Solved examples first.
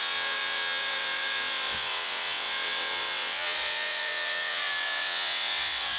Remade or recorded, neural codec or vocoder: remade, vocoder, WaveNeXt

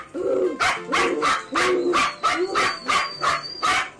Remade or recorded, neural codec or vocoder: recorded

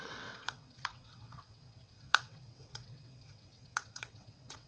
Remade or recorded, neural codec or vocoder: remade, vocoder, WaveNeXt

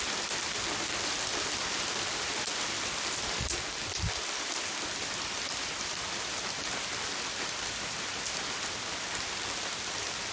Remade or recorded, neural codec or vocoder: recorded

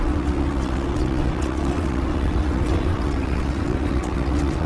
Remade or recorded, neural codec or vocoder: remade, vocoder, WaveNeXt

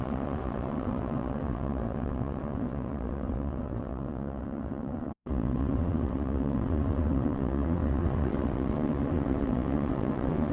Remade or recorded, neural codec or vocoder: remade, vocoder, WaveNeXt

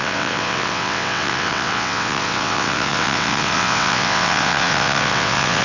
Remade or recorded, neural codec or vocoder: remade, vocoder, WaveNeXt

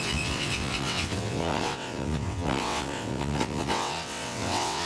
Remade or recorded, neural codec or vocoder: remade, vocoder, WaveNeXt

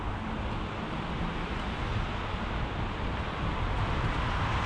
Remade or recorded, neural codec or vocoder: recorded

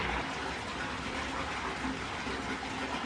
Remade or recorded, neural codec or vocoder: recorded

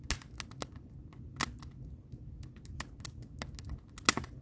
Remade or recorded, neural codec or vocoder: recorded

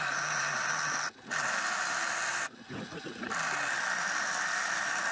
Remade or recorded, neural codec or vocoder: recorded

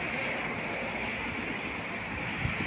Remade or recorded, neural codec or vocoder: recorded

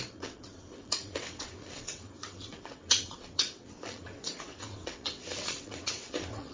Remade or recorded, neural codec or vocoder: remade, vocoder, WaveNeXt